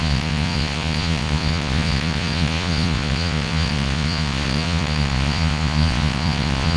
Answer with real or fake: fake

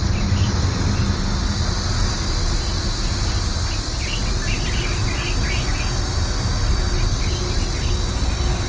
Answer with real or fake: real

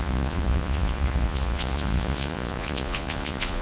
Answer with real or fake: fake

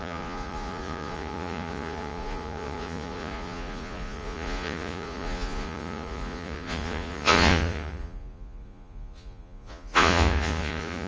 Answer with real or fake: fake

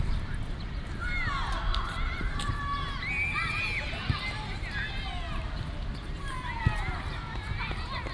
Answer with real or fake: real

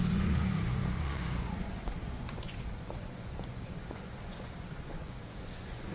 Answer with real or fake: fake